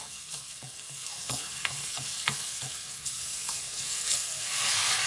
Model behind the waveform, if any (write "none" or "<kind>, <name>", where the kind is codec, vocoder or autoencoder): codec, SNAC